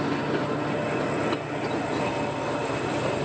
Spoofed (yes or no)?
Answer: no